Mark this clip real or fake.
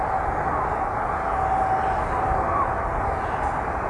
real